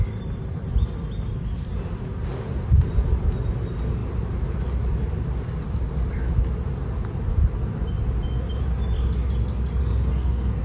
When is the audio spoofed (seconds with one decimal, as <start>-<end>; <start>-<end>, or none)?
9.8-10.6